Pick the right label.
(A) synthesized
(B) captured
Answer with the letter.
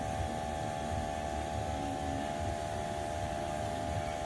B